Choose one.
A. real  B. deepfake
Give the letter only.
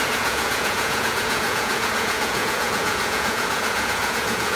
B